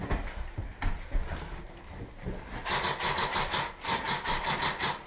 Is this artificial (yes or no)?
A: no